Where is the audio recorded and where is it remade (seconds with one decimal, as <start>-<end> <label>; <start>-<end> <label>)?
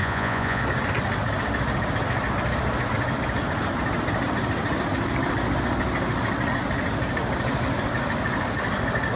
0.0-0.6 remade; 0.6-9.2 recorded